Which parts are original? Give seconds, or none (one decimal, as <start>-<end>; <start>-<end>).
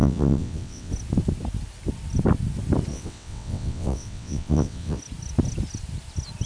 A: 0.9-2.9; 5.0-6.5